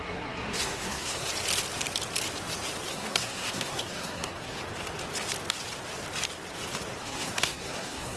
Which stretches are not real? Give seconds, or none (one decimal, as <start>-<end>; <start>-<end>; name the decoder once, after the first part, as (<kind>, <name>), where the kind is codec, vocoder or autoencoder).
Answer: 0.0-1.3 (codec, SNAC); 2.9-4.6; 7.0-8.2